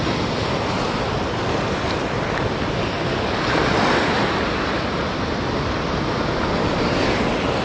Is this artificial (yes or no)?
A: no